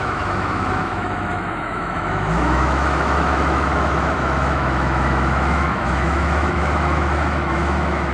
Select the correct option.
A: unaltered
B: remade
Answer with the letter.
B